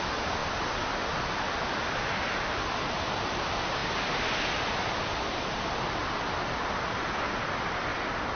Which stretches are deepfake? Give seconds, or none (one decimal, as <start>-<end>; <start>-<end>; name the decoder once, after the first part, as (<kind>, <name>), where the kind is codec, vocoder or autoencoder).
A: 0.4-1.2 (vocoder, BigVGAN v2); 3.8-5.9